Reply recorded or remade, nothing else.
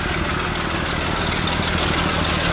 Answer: recorded